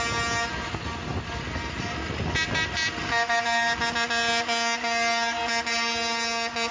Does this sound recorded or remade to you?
recorded